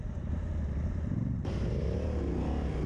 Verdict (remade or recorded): recorded